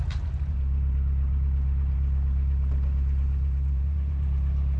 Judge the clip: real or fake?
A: fake